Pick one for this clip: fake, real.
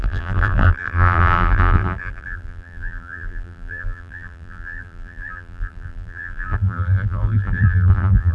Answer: fake